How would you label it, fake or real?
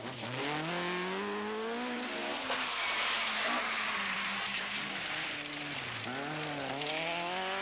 real